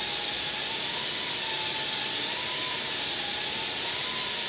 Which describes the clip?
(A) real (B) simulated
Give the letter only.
A